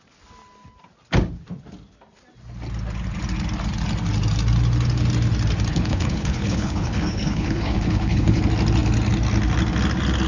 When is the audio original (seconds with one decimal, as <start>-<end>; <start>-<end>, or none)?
0.0-5.7; 8.4-10.3